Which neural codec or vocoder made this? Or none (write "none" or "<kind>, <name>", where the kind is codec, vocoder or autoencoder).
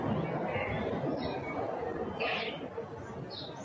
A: none